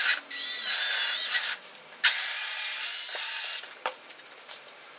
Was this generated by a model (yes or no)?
yes